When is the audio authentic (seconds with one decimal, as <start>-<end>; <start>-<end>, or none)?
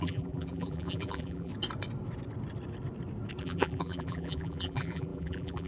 1.5-3.4